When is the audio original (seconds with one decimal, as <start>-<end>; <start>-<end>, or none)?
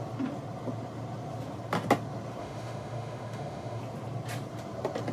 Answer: 0.0-2.4; 3.8-5.1